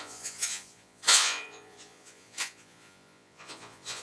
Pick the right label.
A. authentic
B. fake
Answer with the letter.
B